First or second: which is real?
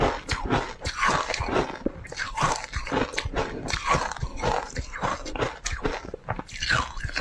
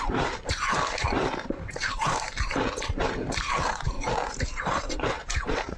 first